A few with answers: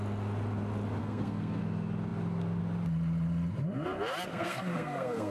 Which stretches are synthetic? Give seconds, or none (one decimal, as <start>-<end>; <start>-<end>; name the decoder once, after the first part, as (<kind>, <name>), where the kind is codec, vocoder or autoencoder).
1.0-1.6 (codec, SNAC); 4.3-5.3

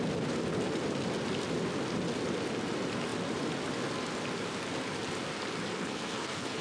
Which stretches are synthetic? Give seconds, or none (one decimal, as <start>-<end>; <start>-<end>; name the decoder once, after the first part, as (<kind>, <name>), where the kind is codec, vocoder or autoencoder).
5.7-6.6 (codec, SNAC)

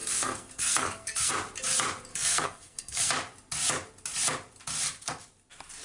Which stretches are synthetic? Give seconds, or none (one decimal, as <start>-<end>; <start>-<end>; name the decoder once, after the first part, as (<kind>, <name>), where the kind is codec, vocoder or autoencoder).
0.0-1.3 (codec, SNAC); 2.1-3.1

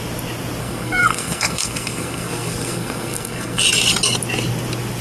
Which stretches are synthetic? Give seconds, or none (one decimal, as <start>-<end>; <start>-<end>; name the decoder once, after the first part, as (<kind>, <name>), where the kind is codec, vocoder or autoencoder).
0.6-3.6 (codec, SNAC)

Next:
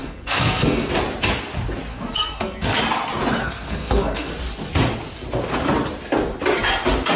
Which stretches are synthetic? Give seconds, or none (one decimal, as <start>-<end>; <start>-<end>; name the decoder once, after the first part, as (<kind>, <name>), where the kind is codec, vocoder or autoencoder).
0.0-0.9 (codec, SNAC); 1.9-2.8; 3.4-4.3

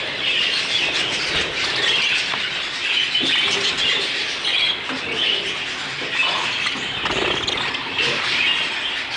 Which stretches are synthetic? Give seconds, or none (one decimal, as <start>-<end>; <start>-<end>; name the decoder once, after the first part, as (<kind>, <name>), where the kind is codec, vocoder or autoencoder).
none